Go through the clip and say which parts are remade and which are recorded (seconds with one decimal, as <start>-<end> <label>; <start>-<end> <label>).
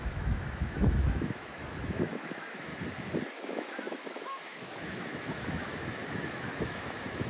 0.0-2.7 remade; 2.7-3.3 recorded; 3.3-7.3 remade